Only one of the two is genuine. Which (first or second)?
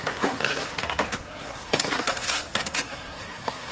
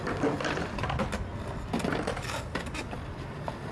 second